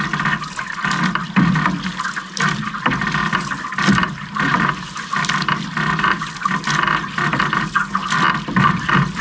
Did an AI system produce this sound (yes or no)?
no